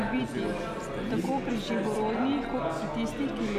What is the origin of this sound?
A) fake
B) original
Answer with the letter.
B